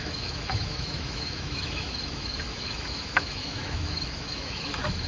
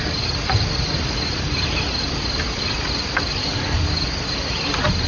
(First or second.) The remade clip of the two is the first